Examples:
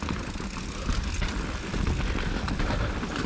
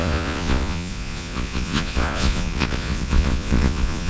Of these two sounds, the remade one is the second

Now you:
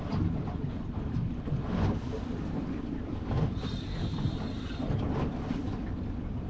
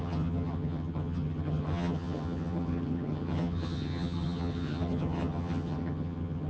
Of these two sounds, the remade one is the second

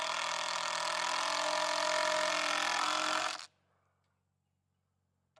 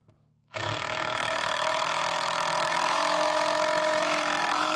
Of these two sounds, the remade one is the second